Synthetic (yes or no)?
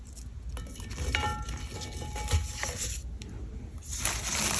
no